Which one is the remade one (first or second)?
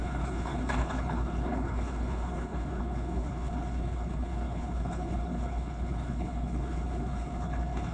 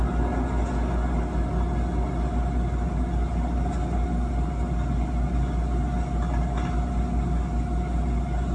first